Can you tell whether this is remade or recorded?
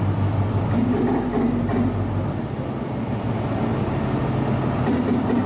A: recorded